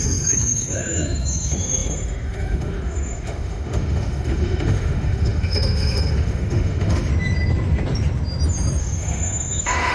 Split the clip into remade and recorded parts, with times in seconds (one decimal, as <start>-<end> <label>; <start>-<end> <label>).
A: 0.0-7.1 remade; 7.1-8.8 recorded; 8.8-9.9 remade